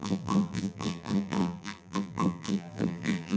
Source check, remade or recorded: remade